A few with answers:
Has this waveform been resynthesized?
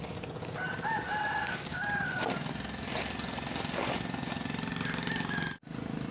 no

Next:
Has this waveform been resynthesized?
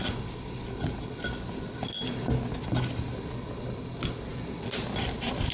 no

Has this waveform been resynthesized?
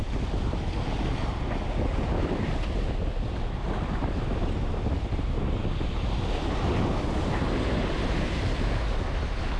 no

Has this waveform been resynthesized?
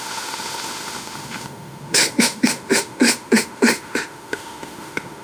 yes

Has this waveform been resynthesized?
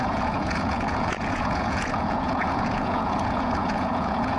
yes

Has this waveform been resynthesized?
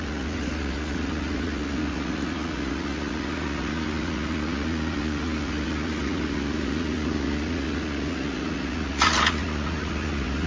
yes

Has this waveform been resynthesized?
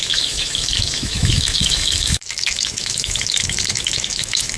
yes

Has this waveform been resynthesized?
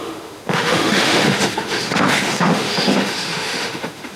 yes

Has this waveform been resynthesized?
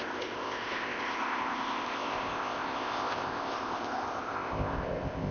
yes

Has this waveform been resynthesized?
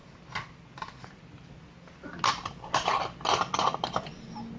no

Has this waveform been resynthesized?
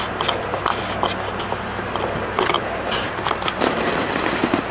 no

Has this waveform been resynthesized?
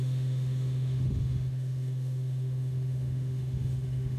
yes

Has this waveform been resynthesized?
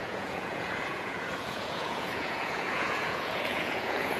yes